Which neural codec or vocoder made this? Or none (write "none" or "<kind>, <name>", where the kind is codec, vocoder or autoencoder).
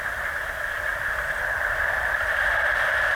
none